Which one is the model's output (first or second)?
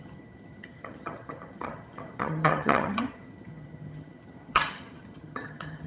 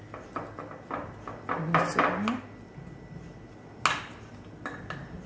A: first